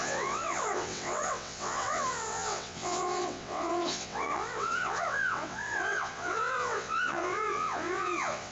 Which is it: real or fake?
fake